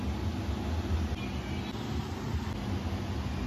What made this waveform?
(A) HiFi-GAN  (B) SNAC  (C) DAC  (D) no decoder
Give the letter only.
D